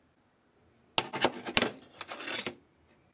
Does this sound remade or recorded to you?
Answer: recorded